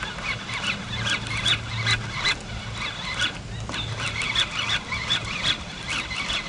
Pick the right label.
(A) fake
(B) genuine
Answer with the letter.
B